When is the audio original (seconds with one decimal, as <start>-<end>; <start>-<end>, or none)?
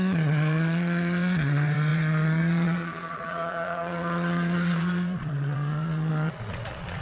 none